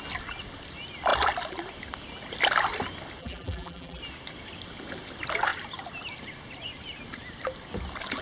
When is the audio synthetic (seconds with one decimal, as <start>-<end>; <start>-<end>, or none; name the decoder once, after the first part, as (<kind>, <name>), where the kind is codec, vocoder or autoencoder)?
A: 3.2-4.0 (vocoder, BigVGAN v2)